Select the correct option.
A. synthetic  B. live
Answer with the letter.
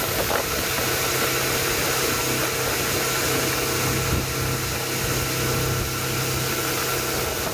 B